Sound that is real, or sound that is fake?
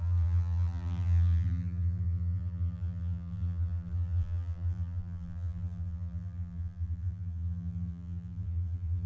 fake